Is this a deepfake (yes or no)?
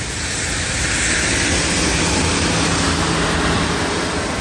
no